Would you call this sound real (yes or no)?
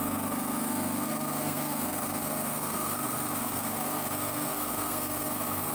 no